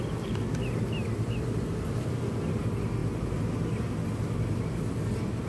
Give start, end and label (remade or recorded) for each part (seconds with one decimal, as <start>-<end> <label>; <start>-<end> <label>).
0.0-5.5 recorded